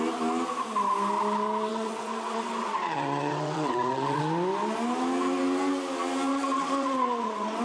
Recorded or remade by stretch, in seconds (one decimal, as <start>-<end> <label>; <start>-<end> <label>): 0.0-1.7 recorded; 1.7-4.2 remade; 4.2-6.3 recorded; 6.3-7.6 remade